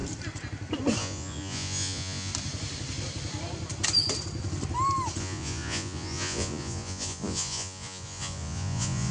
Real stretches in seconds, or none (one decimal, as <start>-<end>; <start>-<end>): 0.0-1.0; 2.3-5.2